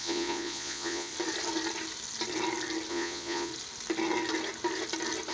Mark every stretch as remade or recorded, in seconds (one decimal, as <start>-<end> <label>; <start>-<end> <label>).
0.0-1.1 remade; 1.1-2.9 recorded; 2.9-3.5 remade; 3.5-5.3 recorded